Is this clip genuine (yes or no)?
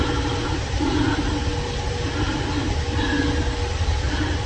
yes